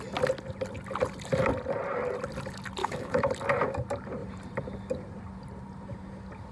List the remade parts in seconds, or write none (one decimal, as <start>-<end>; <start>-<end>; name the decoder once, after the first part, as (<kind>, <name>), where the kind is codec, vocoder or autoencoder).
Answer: 2.8-3.3 (autoencoder, DAC-VAE)